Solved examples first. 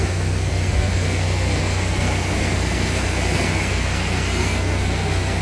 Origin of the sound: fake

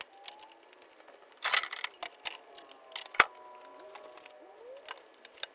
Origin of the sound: real